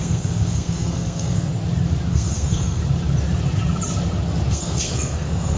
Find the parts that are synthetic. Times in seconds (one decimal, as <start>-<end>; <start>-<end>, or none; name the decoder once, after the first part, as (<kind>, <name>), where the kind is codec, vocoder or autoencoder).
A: 0.0-1.5 (codec, SNAC); 2.1-2.8; 4.5-5.6